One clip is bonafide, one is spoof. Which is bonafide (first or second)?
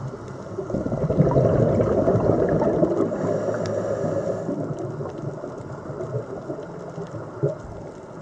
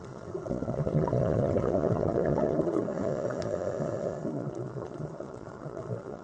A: first